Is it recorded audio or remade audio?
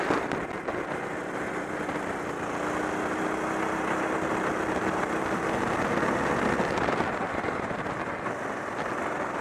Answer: recorded